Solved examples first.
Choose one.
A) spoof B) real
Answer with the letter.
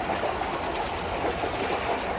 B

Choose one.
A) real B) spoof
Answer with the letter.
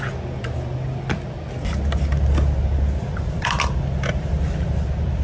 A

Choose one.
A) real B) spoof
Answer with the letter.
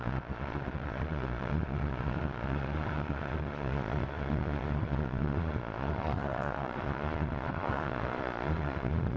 B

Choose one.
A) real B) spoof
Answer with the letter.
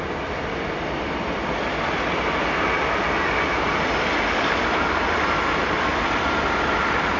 A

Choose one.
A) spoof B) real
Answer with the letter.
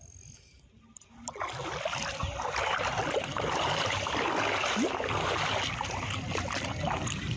B